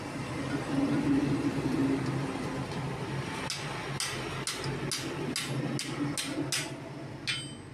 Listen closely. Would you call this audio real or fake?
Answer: real